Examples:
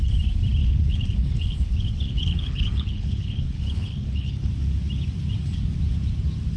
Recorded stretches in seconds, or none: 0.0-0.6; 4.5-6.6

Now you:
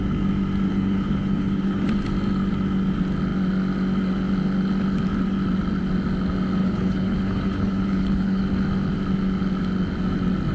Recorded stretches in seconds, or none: 0.0-0.7; 1.8-6.6; 8.4-10.5

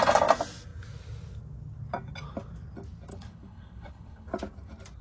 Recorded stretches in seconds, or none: 0.0-3.1; 4.3-5.0